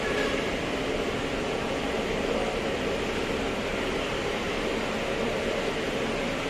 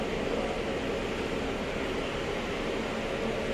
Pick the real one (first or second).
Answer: second